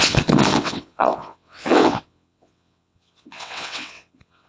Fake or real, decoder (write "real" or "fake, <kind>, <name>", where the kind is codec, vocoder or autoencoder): fake, vocoder, WaveNeXt